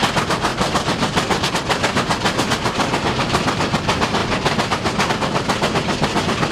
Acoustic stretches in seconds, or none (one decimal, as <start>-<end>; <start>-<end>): 0.0-6.5